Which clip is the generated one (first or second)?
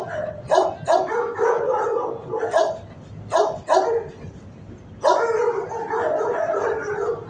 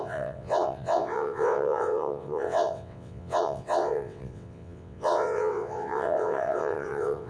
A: second